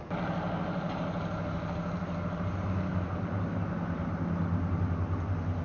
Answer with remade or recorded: recorded